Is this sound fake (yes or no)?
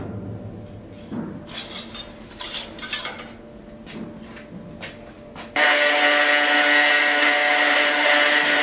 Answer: no